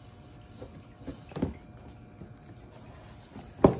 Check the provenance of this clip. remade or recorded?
recorded